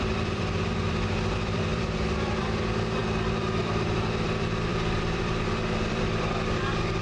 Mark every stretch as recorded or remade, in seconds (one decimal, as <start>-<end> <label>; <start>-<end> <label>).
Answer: 0.0-7.0 remade